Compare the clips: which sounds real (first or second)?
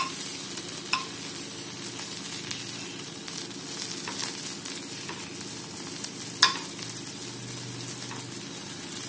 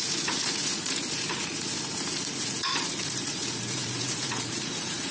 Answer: first